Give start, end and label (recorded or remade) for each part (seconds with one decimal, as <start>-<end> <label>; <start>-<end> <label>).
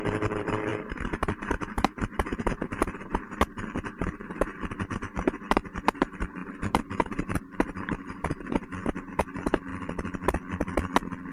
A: 0.0-9.7 remade; 9.7-11.3 recorded